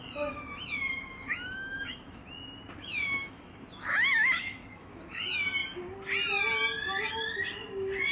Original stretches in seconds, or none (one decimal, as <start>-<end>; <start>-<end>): 2.2-2.8; 5.6-8.1